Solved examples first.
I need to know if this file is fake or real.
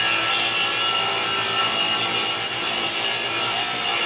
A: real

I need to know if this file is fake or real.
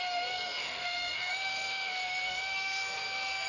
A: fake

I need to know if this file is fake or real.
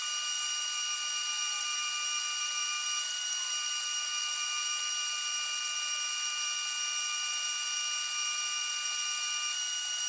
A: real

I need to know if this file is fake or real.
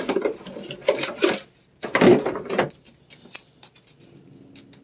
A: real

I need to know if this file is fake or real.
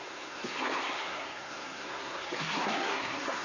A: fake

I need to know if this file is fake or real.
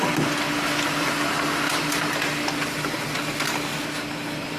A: real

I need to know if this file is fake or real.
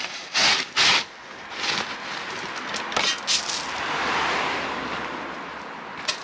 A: real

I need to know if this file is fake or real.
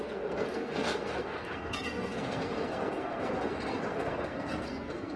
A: fake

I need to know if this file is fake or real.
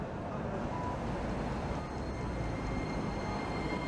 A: real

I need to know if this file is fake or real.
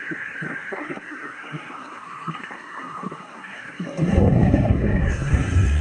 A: fake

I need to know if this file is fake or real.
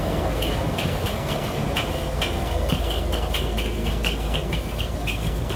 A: fake